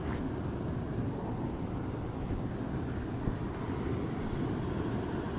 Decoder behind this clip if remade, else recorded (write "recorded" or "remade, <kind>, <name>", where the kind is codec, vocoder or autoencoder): recorded